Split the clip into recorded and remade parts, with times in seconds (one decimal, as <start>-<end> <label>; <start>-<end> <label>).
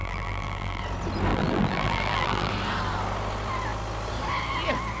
0.0-0.8 remade; 0.8-1.3 recorded; 1.3-2.5 remade; 2.5-5.0 recorded